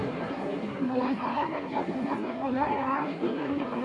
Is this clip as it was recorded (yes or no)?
no